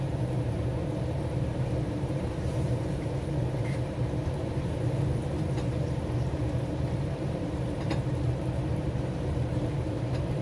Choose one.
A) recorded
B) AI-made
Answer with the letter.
B